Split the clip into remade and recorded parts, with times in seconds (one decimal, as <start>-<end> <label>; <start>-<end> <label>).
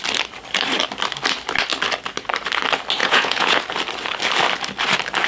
0.0-3.0 recorded; 3.0-3.6 remade; 3.6-5.3 recorded